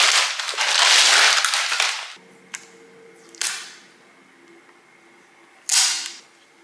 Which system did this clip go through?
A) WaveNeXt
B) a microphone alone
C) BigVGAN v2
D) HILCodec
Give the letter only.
B